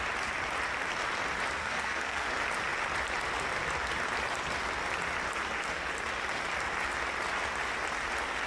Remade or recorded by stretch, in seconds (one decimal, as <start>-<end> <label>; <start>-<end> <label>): 0.0-1.6 recorded; 1.6-2.3 remade; 2.3-8.5 recorded